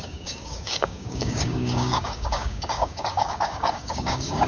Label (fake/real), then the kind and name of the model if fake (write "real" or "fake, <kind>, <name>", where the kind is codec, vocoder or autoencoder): fake, codec, DAC